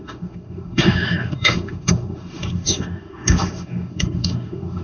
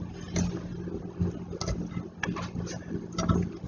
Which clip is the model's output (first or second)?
first